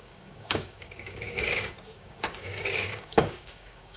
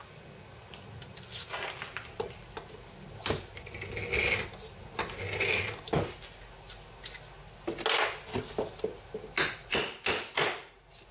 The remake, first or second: first